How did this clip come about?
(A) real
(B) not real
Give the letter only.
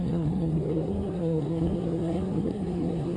B